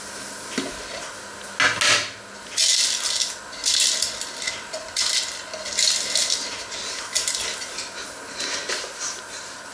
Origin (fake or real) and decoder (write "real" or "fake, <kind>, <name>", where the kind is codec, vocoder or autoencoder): real